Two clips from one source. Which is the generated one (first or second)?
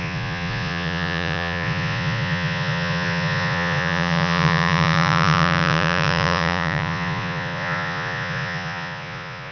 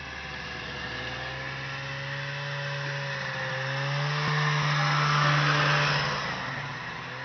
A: first